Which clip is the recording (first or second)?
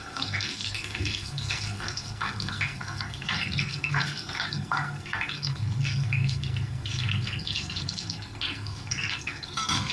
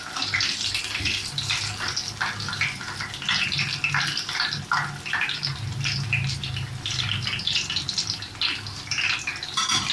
second